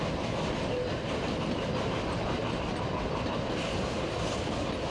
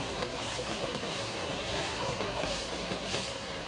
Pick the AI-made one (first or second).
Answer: second